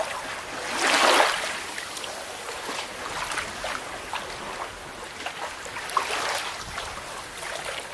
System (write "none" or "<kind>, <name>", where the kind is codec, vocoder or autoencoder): none